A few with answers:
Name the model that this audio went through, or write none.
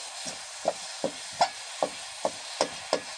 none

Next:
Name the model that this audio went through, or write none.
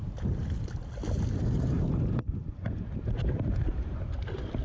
none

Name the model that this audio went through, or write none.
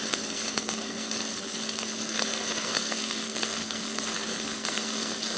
codec, SNAC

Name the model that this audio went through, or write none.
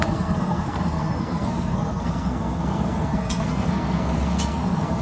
codec, SNAC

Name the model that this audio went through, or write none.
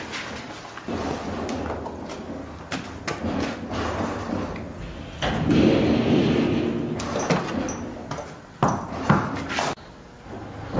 none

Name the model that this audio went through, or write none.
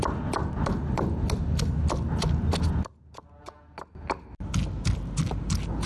none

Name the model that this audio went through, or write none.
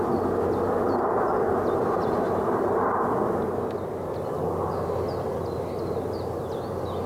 none